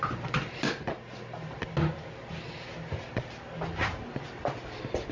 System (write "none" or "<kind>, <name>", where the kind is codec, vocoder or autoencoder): none